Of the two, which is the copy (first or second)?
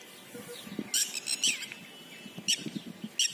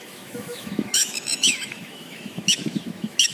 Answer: second